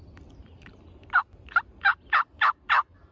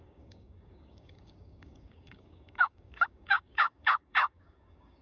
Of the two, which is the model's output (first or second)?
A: second